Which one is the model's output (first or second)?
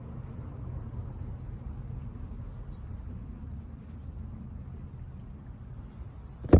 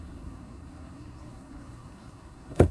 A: second